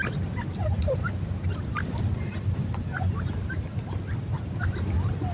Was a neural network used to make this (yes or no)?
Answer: no